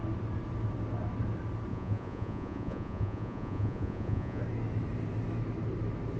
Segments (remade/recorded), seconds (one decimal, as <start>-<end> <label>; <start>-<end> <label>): 0.0-1.7 recorded; 1.7-4.4 remade; 4.4-6.2 recorded